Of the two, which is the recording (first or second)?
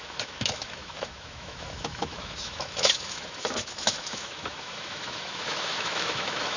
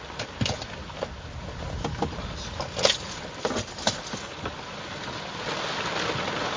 second